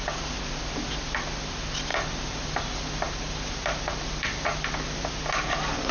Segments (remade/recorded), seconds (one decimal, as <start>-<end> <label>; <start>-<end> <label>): 0.0-1.9 recorded; 1.9-5.1 remade; 5.1-5.9 recorded